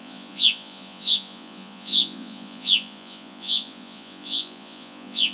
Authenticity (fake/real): fake